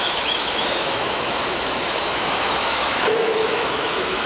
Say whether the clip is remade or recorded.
remade